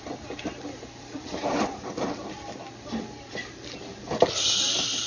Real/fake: fake